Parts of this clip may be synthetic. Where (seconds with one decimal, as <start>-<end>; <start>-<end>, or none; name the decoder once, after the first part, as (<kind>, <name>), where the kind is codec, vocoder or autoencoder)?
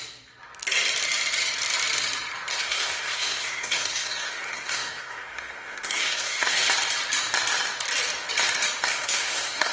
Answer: 2.5-6.6 (codec, SNAC); 8.9-9.7